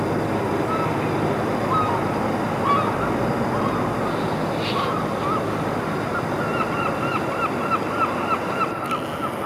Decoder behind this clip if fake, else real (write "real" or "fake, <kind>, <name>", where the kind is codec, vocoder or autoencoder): real